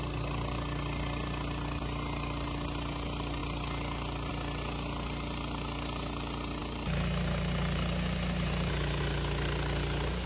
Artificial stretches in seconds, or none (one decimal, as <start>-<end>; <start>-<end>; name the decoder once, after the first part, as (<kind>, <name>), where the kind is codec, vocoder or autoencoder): none